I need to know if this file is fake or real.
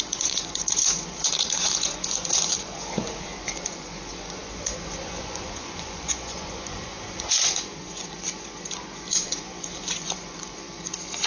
fake